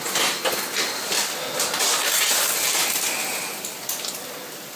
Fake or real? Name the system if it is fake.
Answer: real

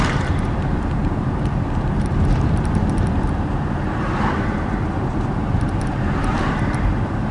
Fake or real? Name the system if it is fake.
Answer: fake, vocoder, BigVGAN v2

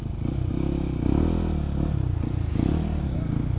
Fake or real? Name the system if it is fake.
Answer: real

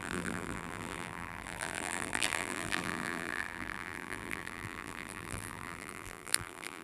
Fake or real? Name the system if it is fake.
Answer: fake, vocoder, BigVGAN v2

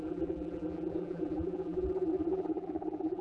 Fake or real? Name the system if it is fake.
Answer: fake, vocoder, BigVGAN v2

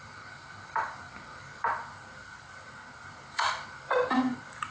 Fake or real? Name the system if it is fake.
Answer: fake, vocoder, BigVGAN v2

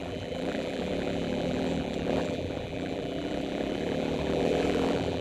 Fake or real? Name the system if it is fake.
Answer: fake, vocoder, BigVGAN v2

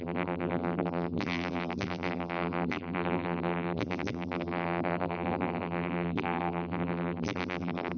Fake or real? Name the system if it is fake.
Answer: fake, vocoder, BigVGAN v2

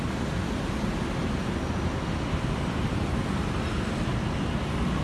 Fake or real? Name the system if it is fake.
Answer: real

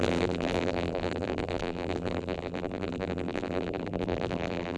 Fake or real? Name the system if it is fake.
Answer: fake, vocoder, BigVGAN v2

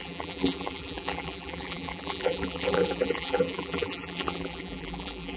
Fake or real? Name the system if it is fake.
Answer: fake, vocoder, BigVGAN v2